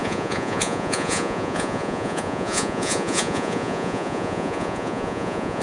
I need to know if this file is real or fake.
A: fake